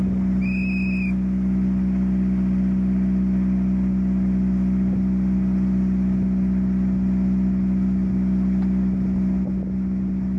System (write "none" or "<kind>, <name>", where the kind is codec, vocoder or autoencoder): none